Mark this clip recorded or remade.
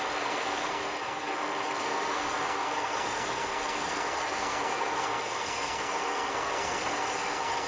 remade